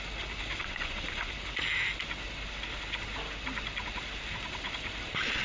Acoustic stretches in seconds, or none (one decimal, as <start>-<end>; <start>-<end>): 0.0-0.6; 1.3-5.4

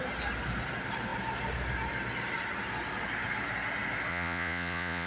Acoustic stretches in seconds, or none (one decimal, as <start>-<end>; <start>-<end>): 0.0-4.1

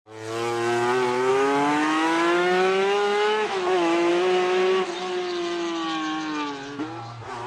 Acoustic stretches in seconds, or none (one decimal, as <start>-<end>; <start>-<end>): 0.0-1.3; 4.1-7.5